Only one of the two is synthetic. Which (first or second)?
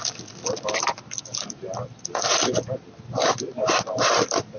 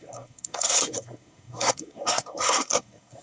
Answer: second